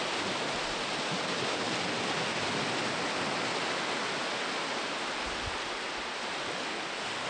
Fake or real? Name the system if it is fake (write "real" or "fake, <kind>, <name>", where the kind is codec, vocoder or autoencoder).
real